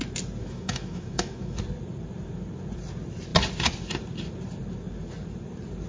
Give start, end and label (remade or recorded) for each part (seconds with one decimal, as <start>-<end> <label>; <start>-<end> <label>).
0.0-0.4 recorded; 0.4-1.6 remade; 1.6-5.9 recorded

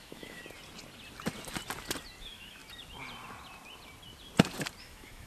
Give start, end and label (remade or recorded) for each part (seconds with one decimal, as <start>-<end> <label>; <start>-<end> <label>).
0.0-0.4 remade; 0.4-2.2 recorded; 2.2-2.6 remade; 2.6-4.8 recorded; 4.8-5.3 remade

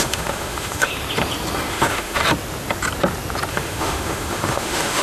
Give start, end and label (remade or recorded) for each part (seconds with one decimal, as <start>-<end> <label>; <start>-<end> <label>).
0.0-0.9 remade; 0.9-1.7 recorded; 1.7-2.2 remade; 2.2-3.5 recorded; 3.5-5.0 remade

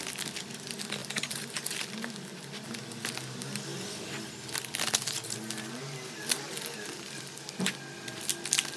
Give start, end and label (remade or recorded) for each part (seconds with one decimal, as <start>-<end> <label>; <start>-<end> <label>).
0.0-8.8 recorded

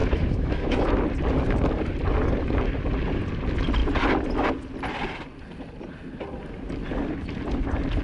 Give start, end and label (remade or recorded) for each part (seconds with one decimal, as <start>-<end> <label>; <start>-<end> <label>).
0.0-0.9 remade; 0.9-8.0 recorded